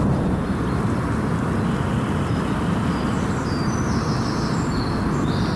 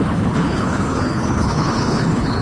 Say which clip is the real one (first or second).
first